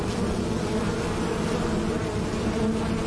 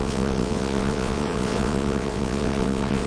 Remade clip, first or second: second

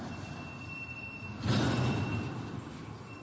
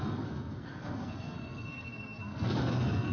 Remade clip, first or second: second